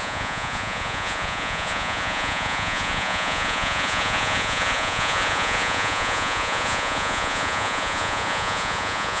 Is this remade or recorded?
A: remade